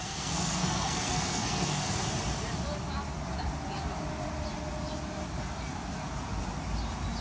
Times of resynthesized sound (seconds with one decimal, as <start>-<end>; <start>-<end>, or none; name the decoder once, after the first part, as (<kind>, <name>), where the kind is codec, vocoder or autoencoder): 0.0-2.0 (codec, SNAC)